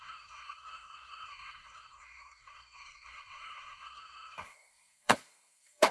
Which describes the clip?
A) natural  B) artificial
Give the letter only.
B